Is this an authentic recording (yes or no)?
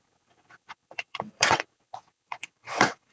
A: no